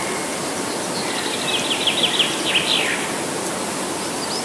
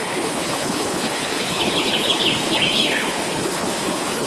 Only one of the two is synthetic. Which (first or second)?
second